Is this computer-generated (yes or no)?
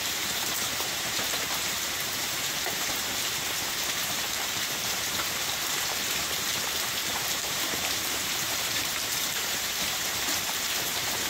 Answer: yes